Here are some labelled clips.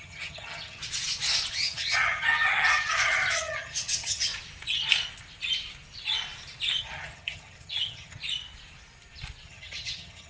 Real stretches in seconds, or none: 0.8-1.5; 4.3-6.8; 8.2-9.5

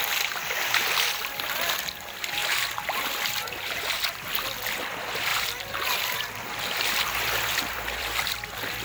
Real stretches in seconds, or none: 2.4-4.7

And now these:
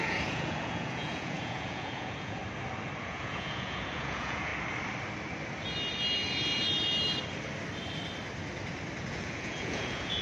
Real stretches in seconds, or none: 2.4-3.0; 4.5-9.1

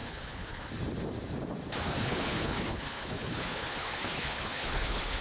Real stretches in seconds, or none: 0.7-1.8

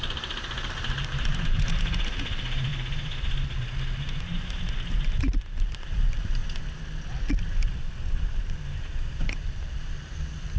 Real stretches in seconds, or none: 2.7-3.6; 6.4-8.4